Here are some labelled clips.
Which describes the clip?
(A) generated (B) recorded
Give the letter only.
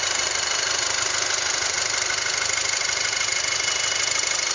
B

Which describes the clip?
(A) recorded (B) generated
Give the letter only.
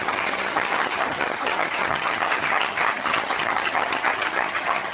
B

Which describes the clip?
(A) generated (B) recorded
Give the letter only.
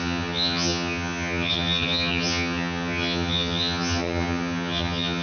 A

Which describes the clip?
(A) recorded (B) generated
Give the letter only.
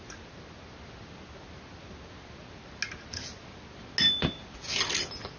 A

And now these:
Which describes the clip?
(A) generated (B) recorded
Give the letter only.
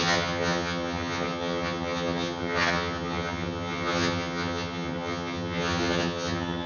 A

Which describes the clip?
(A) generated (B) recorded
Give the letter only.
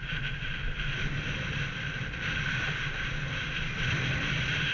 B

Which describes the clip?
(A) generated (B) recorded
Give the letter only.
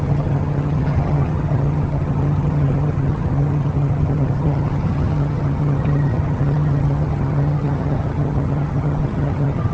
A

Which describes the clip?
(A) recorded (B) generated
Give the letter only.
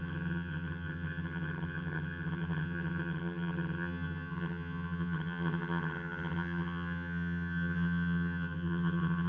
B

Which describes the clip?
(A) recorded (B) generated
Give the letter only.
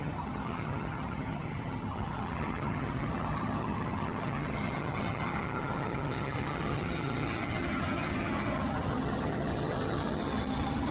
B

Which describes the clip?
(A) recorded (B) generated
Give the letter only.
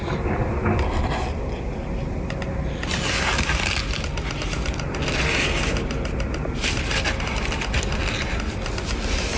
A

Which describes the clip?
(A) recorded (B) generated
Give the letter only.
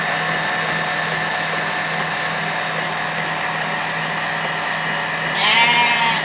A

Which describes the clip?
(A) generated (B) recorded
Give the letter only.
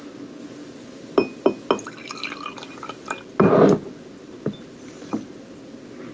B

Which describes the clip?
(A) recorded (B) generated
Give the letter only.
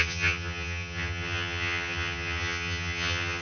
B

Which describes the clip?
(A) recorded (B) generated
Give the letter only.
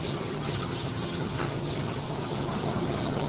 B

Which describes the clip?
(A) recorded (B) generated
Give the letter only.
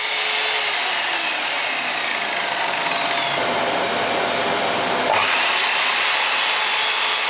A